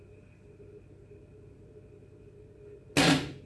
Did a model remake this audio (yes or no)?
no